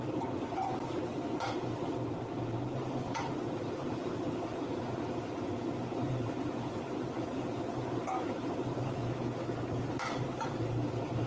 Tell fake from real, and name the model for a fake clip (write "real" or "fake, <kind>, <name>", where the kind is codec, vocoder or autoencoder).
real